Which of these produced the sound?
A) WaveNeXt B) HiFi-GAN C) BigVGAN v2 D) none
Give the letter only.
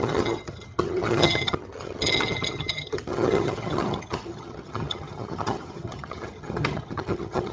B